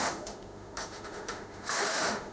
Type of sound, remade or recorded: remade